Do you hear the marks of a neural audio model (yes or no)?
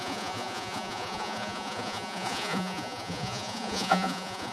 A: yes